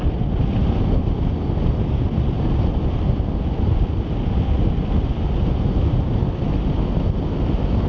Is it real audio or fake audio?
real